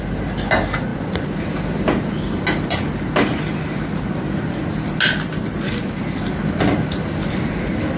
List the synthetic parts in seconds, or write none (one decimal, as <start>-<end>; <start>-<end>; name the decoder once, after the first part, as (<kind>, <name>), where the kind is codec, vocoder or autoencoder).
none